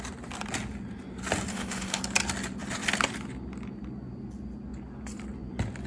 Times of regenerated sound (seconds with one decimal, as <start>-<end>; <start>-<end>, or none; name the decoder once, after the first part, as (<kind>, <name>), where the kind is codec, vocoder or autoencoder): 1.5-2.0 (autoencoder, DAC-VAE)